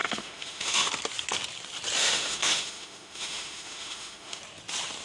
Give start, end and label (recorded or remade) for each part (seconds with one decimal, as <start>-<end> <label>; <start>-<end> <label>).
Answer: 0.0-0.9 remade; 0.9-2.0 recorded; 2.0-4.4 remade; 4.4-5.0 recorded